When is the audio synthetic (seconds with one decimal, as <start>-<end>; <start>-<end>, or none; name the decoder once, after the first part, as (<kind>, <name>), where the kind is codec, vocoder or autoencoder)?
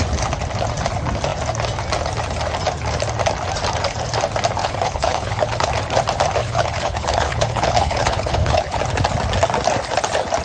4.6-5.7 (codec, HILCodec); 6.4-8.8